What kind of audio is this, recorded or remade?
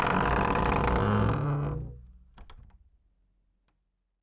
recorded